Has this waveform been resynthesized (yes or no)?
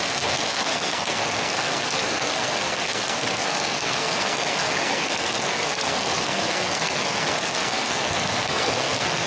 yes